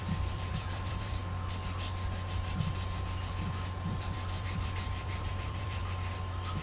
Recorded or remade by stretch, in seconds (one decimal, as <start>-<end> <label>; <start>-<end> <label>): 0.0-1.2 remade; 1.2-3.9 recorded; 3.9-5.8 remade; 5.8-6.6 recorded